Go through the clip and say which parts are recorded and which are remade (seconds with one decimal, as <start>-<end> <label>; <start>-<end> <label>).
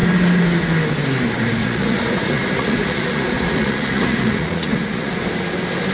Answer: 0.0-1.6 recorded; 1.6-5.1 remade; 5.1-5.9 recorded